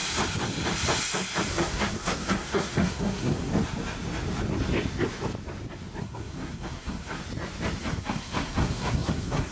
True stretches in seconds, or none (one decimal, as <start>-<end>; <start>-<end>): 0.0-1.5; 3.5-6.0; 7.2-7.8